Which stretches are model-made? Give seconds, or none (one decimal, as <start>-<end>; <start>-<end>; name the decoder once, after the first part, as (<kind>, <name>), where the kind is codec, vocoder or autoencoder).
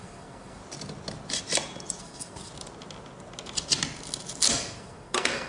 0.0-0.6 (codec, SNAC); 2.0-2.5; 4.5-5.5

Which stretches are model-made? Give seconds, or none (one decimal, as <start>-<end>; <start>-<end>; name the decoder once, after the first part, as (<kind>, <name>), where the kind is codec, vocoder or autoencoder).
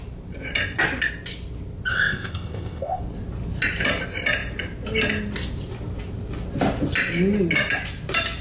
1.9-3.0 (codec, ZipCodec)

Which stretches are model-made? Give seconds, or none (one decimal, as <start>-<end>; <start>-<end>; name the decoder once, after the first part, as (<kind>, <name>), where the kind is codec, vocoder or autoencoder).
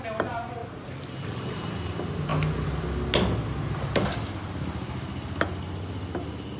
0.6-1.7 (vocoder, BigVGAN v2)